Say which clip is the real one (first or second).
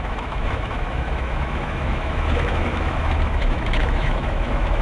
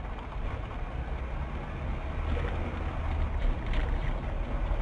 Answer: second